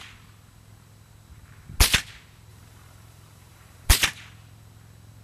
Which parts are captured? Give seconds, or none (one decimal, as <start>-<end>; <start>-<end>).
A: 0.0-2.5; 3.9-5.2